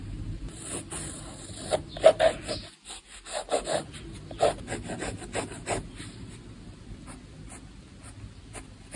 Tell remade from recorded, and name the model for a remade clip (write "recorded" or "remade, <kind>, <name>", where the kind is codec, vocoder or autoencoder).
recorded